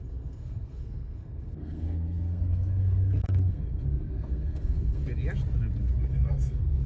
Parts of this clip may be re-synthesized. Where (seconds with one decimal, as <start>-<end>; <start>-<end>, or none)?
0.0-5.0; 6.1-6.9